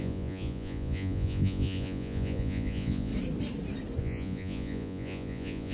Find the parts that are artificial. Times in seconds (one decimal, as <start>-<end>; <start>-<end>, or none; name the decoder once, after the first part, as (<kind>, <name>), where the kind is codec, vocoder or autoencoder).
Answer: 0.0-3.1 (vocoder, Vocos); 4.0-5.7